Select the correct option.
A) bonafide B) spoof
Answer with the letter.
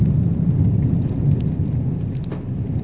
A